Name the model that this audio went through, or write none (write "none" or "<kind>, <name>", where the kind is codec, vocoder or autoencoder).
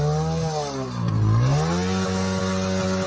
none